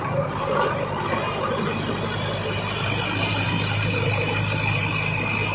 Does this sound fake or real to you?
real